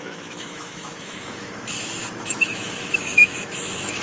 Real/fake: fake